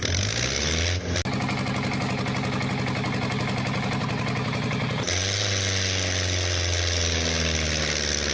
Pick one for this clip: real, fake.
real